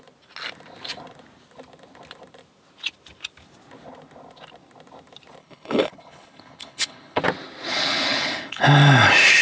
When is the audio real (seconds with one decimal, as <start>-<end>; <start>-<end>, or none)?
0.0-5.4; 7.2-7.7; 8.6-9.4